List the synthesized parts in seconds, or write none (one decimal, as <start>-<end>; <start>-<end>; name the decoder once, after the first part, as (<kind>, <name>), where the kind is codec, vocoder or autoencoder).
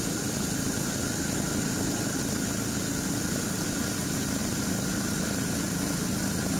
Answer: none